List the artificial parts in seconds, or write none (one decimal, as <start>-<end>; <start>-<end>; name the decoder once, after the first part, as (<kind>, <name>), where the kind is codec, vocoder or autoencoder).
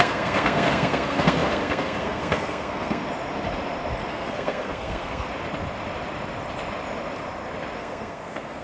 0.0-3.0 (codec, SNAC); 4.1-5.3; 7.8-8.6